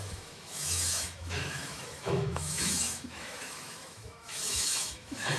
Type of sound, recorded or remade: remade